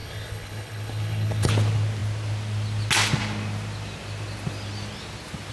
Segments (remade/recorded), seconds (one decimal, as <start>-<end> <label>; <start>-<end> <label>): 0.0-1.5 remade; 1.5-5.5 recorded